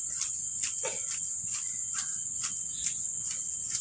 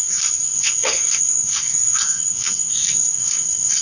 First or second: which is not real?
second